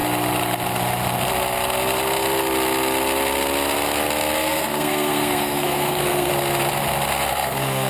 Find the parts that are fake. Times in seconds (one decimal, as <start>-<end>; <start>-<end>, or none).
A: 4.4-6.3; 7.3-7.9